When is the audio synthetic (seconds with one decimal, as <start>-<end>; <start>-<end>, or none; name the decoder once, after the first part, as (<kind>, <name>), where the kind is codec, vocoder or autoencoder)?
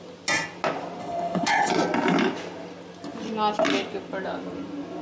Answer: 1.0-1.7 (codec, HILCodec)